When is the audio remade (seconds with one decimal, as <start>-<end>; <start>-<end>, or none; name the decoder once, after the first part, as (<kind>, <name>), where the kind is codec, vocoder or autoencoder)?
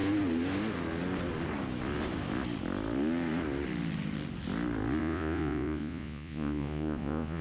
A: 5.0-7.4 (vocoder, Vocos)